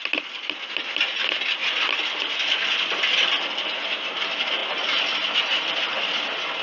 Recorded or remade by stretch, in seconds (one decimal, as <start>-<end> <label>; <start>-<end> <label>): 0.0-6.6 recorded